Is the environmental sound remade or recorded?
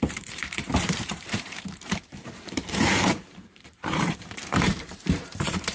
remade